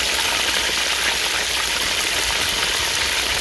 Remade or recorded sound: recorded